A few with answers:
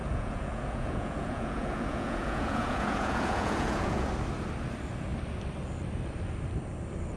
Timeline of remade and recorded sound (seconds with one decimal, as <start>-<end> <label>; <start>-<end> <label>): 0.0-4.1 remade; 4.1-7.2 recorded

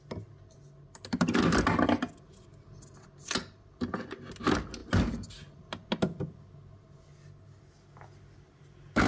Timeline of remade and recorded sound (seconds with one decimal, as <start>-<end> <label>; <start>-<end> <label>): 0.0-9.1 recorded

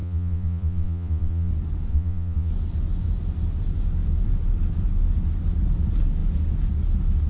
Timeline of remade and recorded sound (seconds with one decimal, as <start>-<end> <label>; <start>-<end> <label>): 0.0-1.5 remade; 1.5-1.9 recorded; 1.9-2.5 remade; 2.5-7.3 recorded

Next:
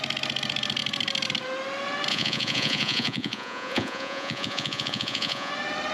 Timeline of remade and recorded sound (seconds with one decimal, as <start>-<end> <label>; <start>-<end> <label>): 0.0-2.1 recorded; 2.1-5.5 remade; 5.5-5.9 recorded